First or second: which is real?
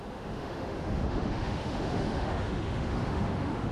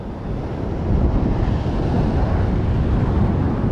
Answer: second